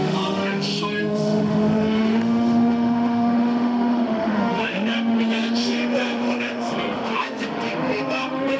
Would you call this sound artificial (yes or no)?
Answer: yes